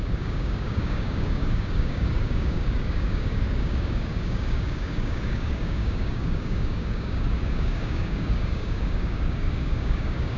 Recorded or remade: remade